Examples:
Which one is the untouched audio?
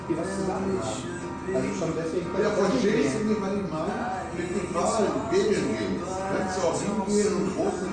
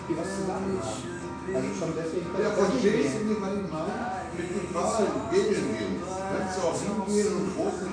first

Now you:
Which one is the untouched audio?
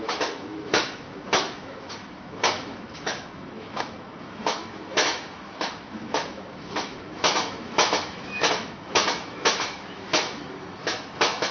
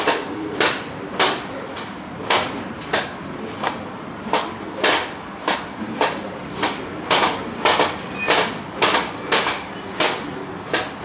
second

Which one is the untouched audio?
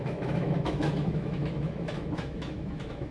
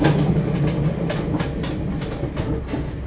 second